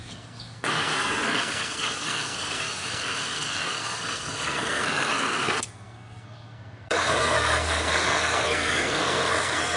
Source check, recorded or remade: remade